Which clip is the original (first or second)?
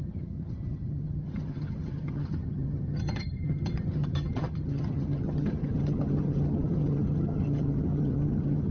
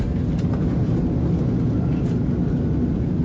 second